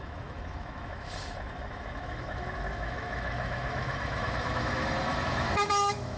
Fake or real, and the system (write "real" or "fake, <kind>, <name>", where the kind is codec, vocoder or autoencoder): fake, autoencoder, DAC-VAE